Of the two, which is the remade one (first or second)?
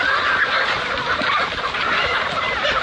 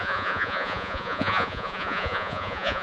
second